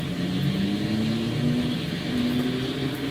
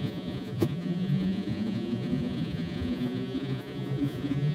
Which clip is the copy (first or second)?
second